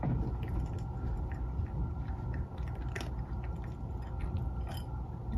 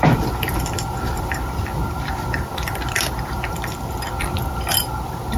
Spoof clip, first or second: second